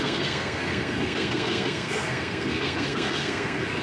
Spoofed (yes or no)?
yes